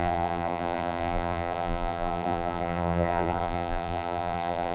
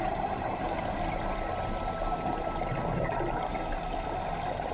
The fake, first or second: first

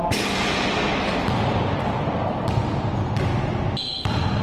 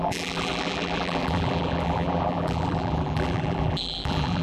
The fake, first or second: second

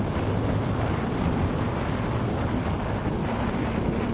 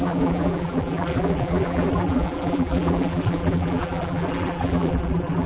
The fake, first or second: second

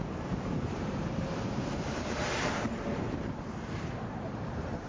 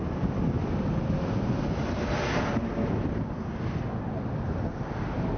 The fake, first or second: first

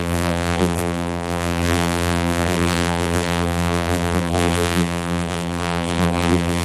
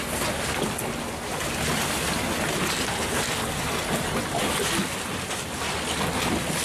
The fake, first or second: first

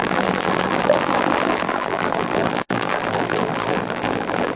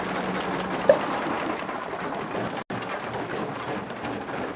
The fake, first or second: first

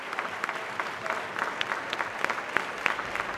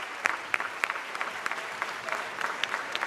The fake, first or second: second